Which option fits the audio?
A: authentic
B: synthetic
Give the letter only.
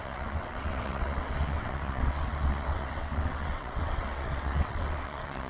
B